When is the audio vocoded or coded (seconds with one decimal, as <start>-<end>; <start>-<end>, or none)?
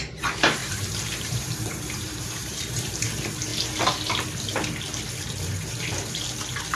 0.6-3.0